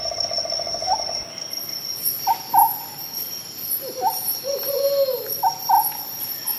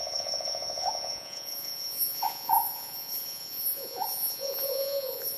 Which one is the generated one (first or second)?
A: second